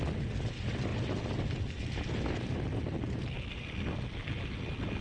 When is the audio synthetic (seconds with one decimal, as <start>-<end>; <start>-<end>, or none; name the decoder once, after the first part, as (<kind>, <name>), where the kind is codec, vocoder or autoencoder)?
none